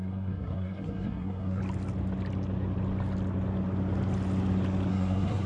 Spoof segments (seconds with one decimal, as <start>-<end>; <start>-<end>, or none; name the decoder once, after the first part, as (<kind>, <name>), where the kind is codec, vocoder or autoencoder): 0.0-1.6 (codec, SNAC); 4.9-5.5